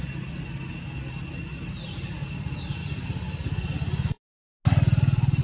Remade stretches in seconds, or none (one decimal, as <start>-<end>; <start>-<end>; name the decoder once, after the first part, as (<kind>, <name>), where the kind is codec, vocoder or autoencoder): none